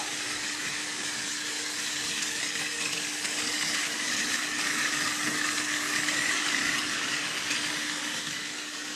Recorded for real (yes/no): no